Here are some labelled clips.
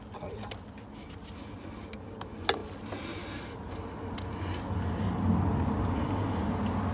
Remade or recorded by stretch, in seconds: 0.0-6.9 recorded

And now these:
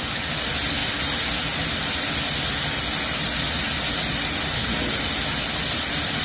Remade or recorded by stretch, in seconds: 0.0-6.2 recorded

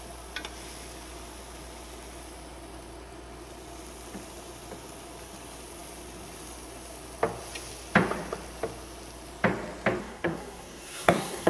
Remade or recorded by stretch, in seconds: 0.0-10.0 recorded; 10.0-11.5 remade

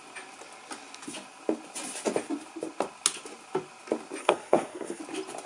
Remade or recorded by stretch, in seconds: 0.0-4.2 recorded; 4.2-5.0 remade; 5.0-5.5 recorded

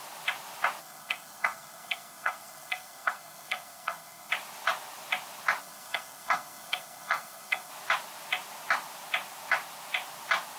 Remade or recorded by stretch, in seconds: 0.0-0.8 recorded; 0.8-4.3 remade; 4.3-5.6 recorded; 5.6-7.7 remade; 7.7-10.6 recorded

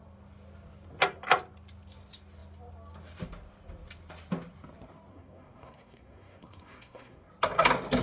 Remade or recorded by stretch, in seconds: 0.0-5.1 recorded; 5.1-7.3 remade; 7.3-8.0 recorded

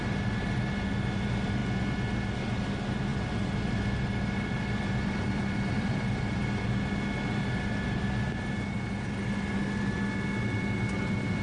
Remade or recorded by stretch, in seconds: 0.0-11.4 recorded

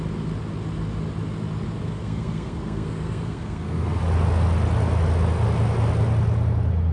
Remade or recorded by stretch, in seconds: 0.0-1.8 recorded; 1.8-4.0 remade; 4.0-6.9 recorded